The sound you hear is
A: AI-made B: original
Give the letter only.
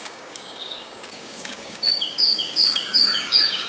A